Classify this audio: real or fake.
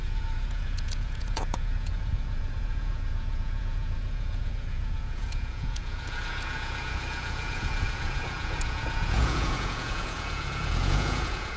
fake